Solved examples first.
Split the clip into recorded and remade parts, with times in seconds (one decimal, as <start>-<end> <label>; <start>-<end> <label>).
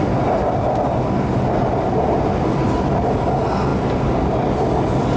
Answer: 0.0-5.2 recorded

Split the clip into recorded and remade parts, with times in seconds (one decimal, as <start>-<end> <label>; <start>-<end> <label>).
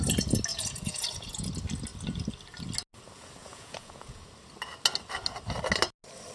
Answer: 0.0-0.5 recorded; 0.5-1.5 remade; 1.5-3.4 recorded; 3.4-4.3 remade; 4.3-6.3 recorded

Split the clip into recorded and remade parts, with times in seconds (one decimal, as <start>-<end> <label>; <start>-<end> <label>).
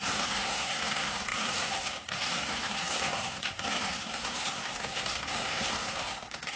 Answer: 0.0-6.6 remade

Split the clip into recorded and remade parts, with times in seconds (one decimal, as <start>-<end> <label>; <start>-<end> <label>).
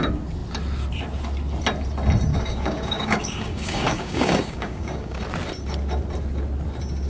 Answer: 0.0-2.3 recorded; 2.3-5.2 remade; 5.2-7.1 recorded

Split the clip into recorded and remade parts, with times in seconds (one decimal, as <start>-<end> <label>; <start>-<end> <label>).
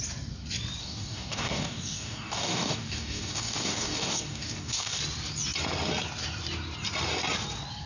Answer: 0.0-0.8 recorded; 0.8-5.0 remade; 5.0-7.9 recorded